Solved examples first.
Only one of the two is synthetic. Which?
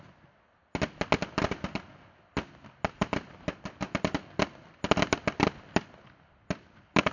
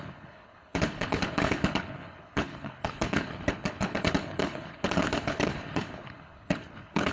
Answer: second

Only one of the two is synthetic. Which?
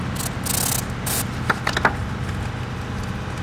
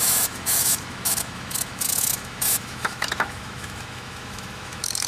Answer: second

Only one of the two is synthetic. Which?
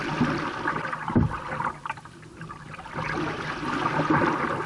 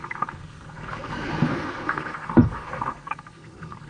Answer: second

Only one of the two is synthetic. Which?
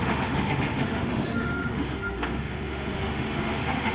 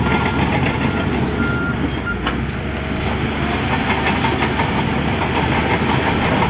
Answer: first